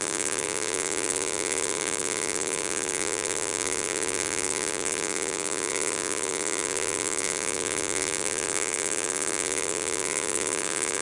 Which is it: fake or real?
fake